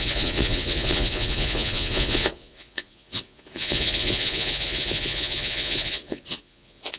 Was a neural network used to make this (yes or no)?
yes